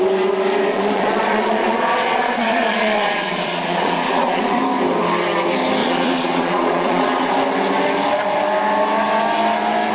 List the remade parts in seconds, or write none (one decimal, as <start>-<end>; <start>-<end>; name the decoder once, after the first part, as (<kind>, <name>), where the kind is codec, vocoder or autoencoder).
0.7-4.6 (vocoder, Vocos); 5.8-7.3